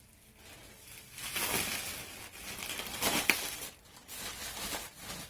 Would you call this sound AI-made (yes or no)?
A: no